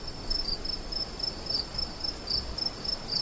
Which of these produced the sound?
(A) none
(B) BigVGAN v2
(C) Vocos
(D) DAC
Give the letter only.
A